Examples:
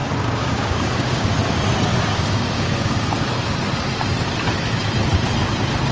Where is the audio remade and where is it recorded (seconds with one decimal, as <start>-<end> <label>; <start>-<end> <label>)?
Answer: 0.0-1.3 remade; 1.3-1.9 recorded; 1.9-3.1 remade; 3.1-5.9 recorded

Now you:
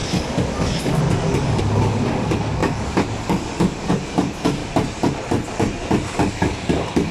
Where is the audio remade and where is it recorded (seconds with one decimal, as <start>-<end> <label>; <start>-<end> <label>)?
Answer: 0.0-4.6 remade; 4.6-6.3 recorded; 6.3-7.1 remade

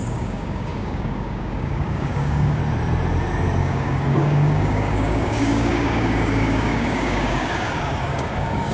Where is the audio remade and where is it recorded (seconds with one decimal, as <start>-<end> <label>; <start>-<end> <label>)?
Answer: 0.0-2.6 remade; 2.6-3.6 recorded; 3.6-8.7 remade

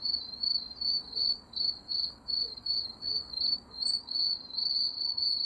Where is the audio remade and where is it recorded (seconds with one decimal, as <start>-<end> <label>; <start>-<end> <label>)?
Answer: 0.0-0.9 recorded; 0.9-4.2 remade; 4.2-5.5 recorded

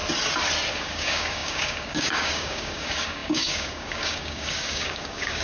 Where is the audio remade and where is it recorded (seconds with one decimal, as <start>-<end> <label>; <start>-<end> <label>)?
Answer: 0.0-0.7 recorded; 0.7-5.4 remade

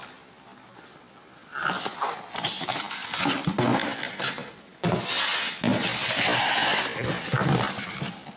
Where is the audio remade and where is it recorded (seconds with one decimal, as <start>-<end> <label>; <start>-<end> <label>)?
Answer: 0.0-8.4 recorded

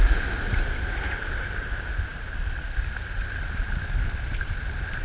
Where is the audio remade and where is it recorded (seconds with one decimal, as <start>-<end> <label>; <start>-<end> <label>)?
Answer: 0.0-5.0 recorded